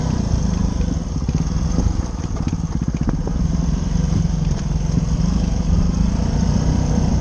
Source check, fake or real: real